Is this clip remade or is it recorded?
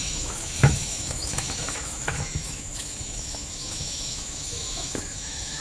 remade